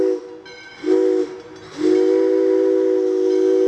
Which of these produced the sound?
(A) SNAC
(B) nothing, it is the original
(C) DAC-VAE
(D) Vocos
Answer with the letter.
B